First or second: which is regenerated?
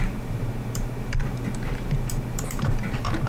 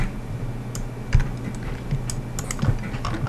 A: first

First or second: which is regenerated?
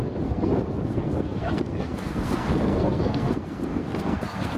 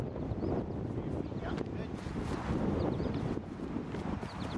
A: first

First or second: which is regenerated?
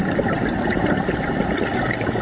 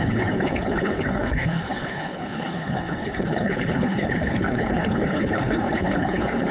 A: second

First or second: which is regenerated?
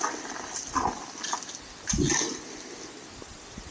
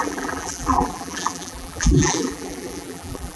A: second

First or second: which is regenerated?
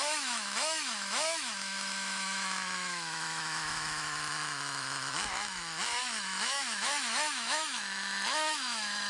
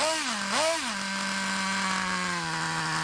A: first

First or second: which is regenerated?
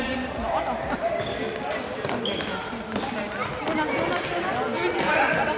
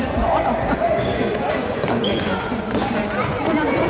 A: second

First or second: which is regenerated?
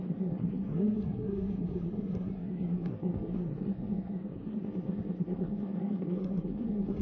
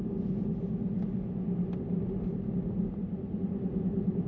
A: first